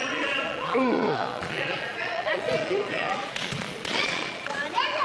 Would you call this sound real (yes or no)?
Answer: no